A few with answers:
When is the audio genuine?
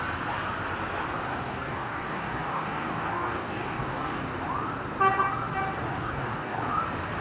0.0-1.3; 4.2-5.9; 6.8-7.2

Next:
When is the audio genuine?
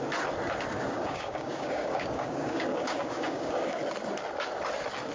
0.0-0.7; 3.8-5.1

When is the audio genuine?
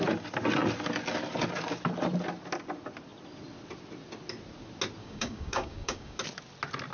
0.0-5.0; 6.2-6.9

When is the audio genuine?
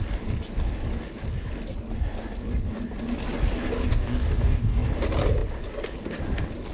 0.0-3.9; 4.9-6.7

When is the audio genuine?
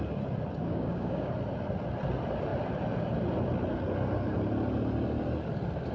0.0-0.6; 1.3-5.9